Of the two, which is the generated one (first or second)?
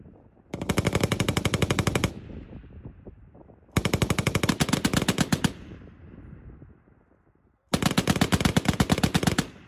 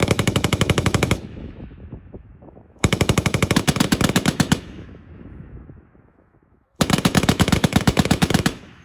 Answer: second